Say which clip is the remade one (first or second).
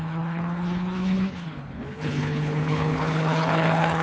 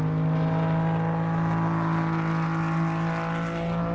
first